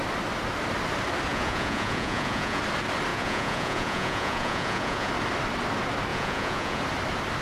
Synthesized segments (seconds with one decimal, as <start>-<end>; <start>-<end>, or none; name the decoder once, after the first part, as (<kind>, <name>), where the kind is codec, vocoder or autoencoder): 1.3-2.6 (vocoder, Vocos); 3.1-5.1; 6.1-6.8